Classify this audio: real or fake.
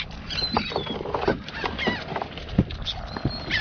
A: real